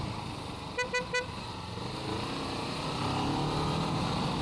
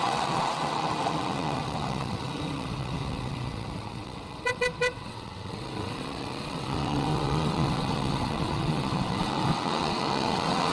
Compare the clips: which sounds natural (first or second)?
first